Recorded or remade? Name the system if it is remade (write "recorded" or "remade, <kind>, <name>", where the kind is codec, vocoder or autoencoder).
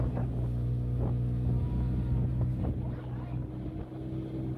recorded